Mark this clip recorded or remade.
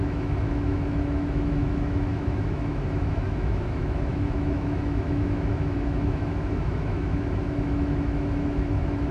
remade